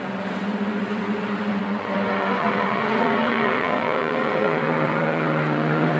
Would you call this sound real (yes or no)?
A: no